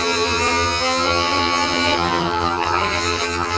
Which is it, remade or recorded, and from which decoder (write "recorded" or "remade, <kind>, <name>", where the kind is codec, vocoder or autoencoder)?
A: remade, vocoder, HiFi-GAN